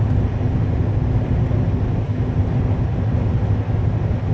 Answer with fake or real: real